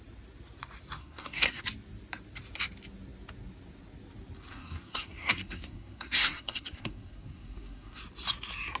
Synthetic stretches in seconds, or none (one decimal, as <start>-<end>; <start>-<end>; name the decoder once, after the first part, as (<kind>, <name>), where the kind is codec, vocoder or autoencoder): 1.0-1.6 (codec, SNAC); 4.5-8.0